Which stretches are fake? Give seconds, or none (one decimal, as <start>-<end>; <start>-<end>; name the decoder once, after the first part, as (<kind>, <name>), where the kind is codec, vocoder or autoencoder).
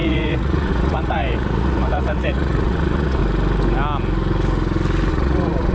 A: 0.0-3.2 (vocoder, Vocos); 5.1-5.7